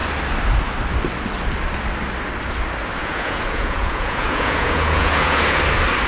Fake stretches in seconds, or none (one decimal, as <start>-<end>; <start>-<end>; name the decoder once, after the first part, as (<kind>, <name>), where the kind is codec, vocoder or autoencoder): 3.0-5.6 (vocoder, Vocos)